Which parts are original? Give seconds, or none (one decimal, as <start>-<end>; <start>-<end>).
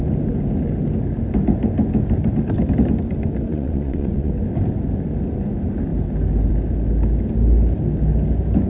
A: 0.0-3.5; 4.3-8.7